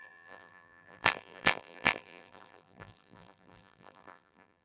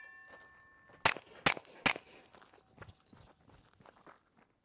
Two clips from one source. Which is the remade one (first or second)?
first